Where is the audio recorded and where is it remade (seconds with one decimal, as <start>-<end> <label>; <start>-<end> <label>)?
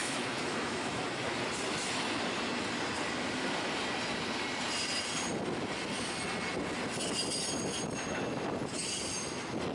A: 0.0-1.0 remade; 1.0-9.7 recorded